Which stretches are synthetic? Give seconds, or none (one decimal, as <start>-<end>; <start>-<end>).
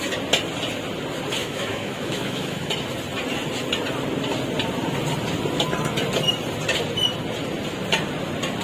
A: 1.4-2.7